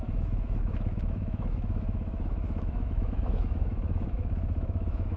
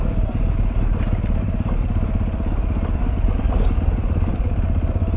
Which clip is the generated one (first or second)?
first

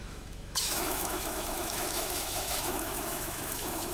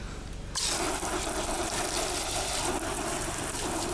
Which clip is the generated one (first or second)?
first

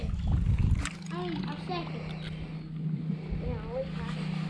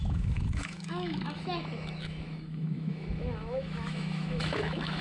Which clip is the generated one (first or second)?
second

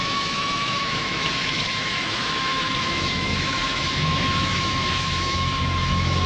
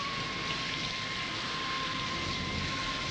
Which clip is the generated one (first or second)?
first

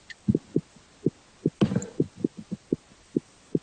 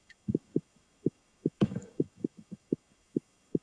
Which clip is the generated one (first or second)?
second